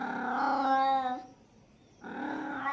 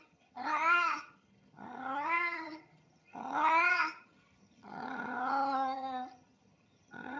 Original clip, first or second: first